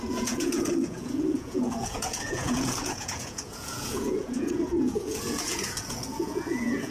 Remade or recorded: remade